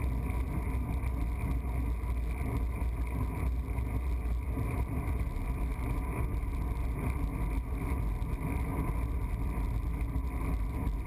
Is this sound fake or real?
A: real